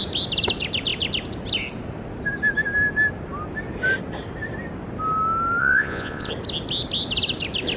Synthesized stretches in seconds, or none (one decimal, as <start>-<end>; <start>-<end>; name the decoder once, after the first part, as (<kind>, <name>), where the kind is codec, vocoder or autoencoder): 5.6-6.3 (vocoder, Vocos)